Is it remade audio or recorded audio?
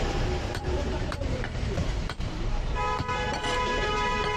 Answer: remade